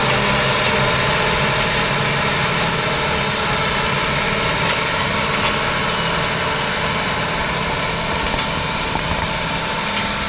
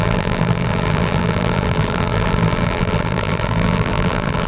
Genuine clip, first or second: first